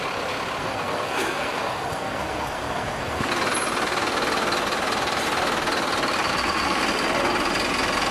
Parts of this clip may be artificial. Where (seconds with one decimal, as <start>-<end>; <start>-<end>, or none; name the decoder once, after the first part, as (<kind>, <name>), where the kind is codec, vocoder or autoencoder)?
0.6-3.3 (codec, SNAC); 6.3-6.8